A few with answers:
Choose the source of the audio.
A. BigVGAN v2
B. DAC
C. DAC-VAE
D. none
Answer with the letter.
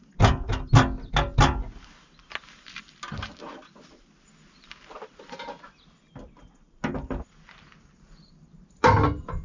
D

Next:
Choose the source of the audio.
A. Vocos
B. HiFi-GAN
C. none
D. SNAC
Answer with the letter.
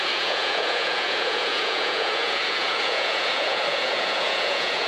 A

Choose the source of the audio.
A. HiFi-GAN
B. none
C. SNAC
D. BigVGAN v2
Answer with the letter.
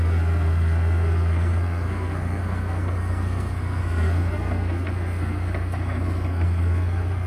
C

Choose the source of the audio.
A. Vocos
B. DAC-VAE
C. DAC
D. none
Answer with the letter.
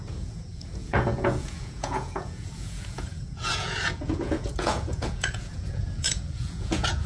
A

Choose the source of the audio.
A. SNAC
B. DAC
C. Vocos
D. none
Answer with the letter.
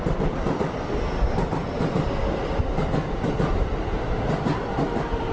D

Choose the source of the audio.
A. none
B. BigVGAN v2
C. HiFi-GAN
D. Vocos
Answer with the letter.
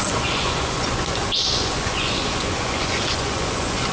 D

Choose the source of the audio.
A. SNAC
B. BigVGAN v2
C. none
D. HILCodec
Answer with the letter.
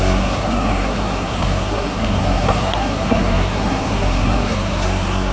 A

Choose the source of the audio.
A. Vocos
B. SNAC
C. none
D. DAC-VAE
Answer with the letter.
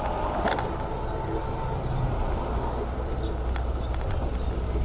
C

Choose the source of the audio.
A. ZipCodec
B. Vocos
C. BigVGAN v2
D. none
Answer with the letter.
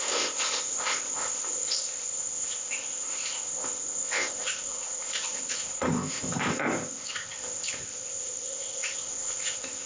A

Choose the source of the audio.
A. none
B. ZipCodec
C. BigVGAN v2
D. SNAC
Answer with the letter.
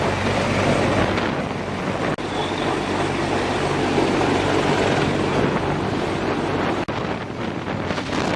A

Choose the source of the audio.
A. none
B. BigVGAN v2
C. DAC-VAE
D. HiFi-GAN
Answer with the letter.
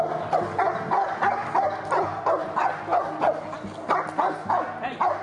A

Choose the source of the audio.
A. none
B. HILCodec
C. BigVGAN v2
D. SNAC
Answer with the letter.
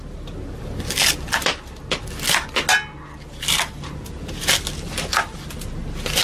A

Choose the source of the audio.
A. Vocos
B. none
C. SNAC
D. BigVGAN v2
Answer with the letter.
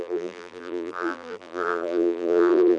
D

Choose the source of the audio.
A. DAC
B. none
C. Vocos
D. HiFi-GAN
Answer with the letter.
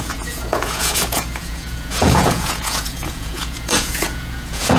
C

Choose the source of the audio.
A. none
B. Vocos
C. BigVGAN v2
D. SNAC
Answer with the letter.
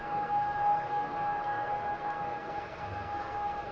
D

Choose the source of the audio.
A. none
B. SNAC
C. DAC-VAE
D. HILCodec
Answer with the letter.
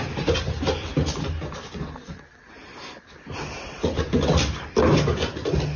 A